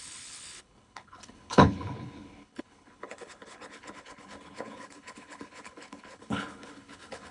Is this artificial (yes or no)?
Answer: yes